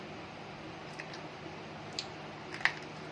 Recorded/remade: recorded